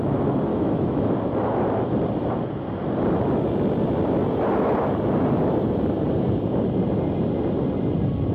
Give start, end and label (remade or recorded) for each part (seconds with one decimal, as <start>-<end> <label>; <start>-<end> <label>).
0.0-0.5 recorded; 0.5-1.1 remade; 1.1-8.3 recorded